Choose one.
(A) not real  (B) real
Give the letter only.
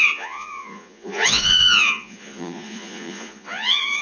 A